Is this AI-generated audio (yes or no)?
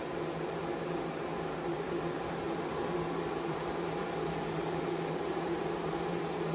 yes